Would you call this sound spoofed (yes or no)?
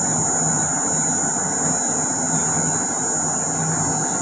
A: no